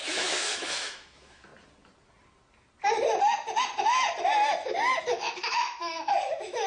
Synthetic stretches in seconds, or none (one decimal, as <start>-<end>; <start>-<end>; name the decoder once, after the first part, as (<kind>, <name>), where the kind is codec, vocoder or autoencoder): 0.0-1.5 (autoencoder, DAC-VAE); 5.0-6.7